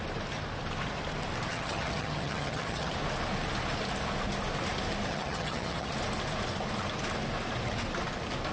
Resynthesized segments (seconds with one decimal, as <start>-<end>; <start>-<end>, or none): 1.5-2.9; 5.1-5.9